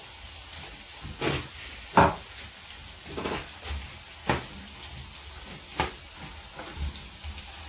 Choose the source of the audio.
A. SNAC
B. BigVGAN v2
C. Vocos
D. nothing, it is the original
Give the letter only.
D